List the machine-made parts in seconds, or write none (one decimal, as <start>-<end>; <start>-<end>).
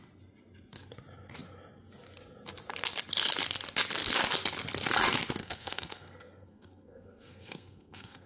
5.4-8.3